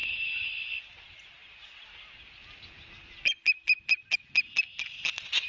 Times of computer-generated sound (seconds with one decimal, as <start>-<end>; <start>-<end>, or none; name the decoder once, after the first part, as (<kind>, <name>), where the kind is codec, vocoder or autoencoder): 0.0-0.5 (autoencoder, DAC-VAE)